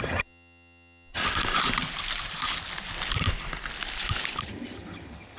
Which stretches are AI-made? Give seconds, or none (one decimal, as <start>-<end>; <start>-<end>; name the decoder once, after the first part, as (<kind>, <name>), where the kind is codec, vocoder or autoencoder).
0.0-1.2 (vocoder, HiFi-GAN); 4.4-5.4